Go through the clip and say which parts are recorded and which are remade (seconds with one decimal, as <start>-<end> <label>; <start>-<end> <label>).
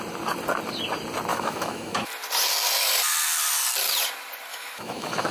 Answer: 0.0-1.3 recorded; 1.3-2.1 remade; 2.1-4.5 recorded; 4.5-5.3 remade